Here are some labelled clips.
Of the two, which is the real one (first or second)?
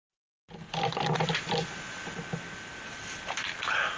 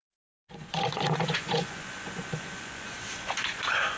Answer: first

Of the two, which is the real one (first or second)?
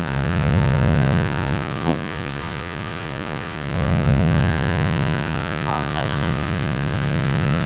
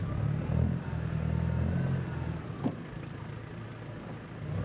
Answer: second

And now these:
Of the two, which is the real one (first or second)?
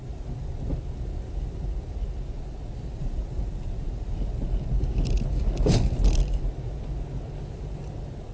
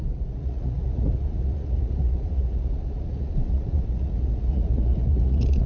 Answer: first